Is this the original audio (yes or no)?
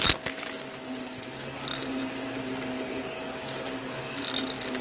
yes